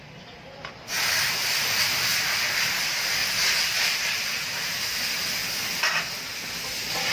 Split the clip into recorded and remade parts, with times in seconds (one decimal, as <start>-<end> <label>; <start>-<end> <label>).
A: 0.0-0.8 recorded; 0.8-2.8 remade; 2.8-3.2 recorded; 3.2-5.0 remade; 5.0-7.1 recorded